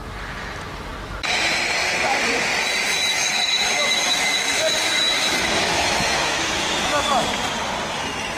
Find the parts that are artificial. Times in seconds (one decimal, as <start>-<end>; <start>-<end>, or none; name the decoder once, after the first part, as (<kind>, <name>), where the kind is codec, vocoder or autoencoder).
3.1-7.1 (autoencoder, DAC-VAE)